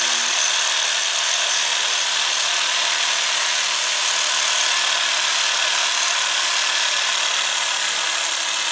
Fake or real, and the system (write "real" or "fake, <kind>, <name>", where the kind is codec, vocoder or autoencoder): real